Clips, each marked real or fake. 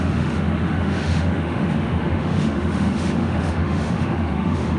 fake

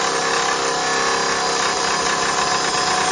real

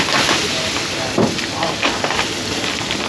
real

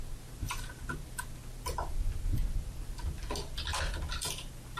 real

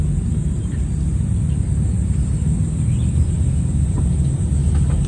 real